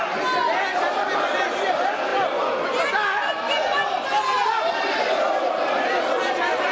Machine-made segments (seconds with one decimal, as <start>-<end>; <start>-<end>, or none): 2.1-6.1